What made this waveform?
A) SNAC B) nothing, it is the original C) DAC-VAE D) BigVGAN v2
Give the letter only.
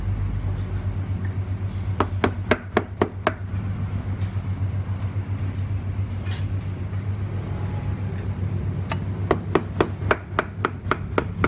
B